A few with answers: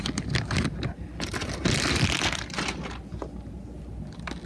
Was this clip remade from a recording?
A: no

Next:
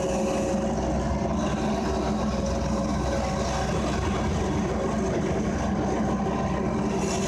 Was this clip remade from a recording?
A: no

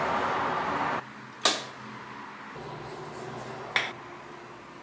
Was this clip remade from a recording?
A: no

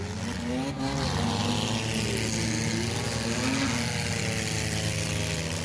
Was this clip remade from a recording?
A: no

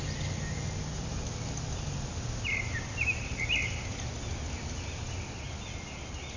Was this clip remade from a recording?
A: no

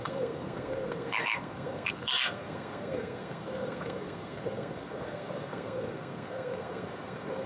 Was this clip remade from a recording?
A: yes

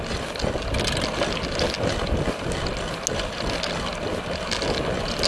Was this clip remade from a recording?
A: no